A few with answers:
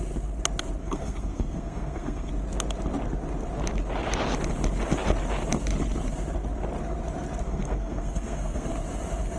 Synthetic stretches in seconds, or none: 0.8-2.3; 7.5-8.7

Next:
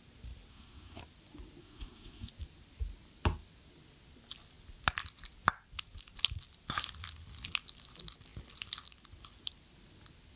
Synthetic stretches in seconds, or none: 0.5-1.0; 1.6-2.3

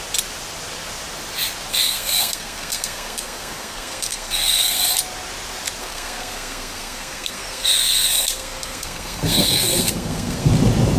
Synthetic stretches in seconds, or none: 1.7-4.8; 5.8-10.5

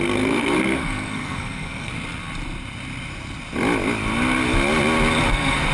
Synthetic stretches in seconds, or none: 0.0-1.9; 5.3-5.7

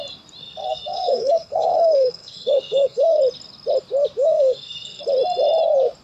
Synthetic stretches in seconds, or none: 0.4-3.2; 4.2-5.0

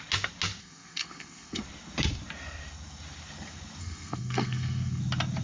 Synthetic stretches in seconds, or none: 0.6-1.6; 3.8-5.0

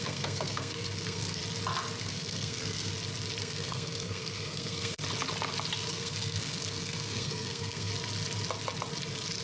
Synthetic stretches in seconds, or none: 0.0-1.4; 2.0-2.9; 3.4-5.0; 5.9-7.9

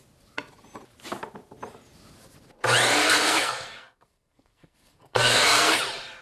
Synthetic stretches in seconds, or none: 3.0-5.8